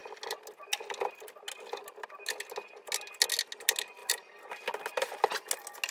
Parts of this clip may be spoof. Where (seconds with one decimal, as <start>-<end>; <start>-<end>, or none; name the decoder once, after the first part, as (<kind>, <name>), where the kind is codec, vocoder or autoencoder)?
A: 4.0-4.5 (vocoder, BigVGAN v2)

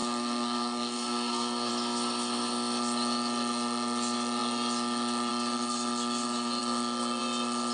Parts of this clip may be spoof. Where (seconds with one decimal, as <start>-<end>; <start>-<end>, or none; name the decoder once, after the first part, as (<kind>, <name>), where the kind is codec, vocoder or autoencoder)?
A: 0.0-1.7 (codec, SNAC)

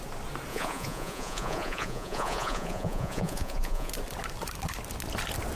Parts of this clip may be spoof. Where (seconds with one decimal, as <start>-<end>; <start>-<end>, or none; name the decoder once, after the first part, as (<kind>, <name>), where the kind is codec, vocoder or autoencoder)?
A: 0.5-3.9 (vocoder, Vocos)